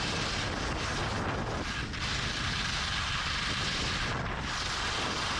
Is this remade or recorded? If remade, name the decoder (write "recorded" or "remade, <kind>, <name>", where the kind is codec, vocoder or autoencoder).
recorded